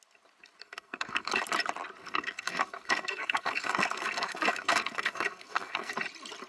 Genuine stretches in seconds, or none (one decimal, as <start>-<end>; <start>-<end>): 0.0-0.6; 1.3-2.0; 5.9-6.5

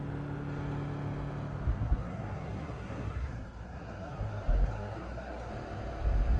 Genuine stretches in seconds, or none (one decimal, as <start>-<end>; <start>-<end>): 0.0-1.7; 5.5-6.4

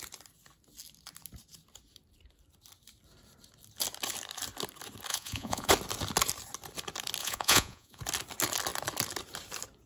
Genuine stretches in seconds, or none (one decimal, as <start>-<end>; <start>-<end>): 0.0-5.1; 5.7-7.2; 8.0-9.9